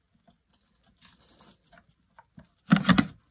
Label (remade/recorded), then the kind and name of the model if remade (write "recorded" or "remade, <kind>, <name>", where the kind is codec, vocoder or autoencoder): recorded